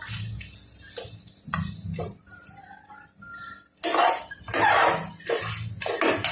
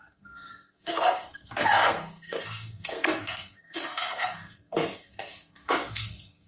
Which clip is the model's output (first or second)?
second